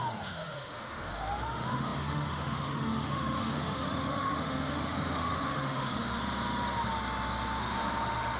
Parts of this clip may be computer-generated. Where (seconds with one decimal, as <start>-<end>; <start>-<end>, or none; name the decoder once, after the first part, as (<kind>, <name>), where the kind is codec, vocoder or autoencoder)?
0.0-6.2 (autoencoder, DAC-VAE); 7.6-8.4

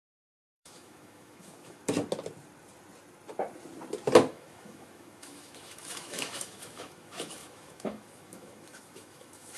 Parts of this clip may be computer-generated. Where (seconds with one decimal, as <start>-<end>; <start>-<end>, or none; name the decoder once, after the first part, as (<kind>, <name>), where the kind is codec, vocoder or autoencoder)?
0.0-1.8 (autoencoder, DAC-VAE); 4.3-9.6

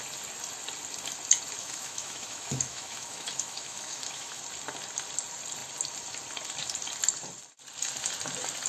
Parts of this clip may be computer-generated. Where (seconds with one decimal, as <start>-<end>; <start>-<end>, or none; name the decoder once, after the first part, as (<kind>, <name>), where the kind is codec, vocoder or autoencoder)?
1.6-4.4 (autoencoder, DAC-VAE)

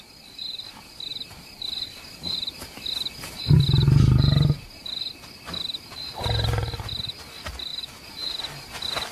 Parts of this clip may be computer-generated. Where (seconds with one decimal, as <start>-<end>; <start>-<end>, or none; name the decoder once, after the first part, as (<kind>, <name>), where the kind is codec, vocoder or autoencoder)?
none

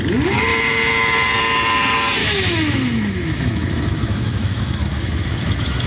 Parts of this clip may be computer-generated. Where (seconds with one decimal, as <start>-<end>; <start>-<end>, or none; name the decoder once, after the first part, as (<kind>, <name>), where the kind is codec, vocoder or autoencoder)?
2.2-5.9 (autoencoder, DAC-VAE)

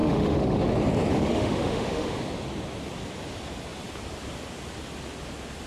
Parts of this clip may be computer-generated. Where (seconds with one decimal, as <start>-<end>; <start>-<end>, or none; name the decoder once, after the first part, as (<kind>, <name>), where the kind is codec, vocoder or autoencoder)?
0.0-0.6 (autoencoder, DAC-VAE); 1.1-2.2

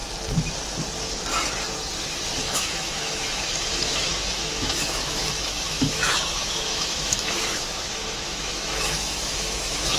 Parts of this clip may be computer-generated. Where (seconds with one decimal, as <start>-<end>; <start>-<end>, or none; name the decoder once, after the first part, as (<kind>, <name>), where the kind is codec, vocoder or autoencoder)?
2.4-10.0 (autoencoder, DAC-VAE)

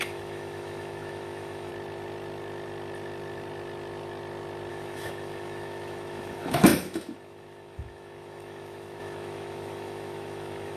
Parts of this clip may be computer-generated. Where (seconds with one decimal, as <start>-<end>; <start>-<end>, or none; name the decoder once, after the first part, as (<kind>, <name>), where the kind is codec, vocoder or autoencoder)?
0.0-1.7 (autoencoder, DAC-VAE); 4.7-10.8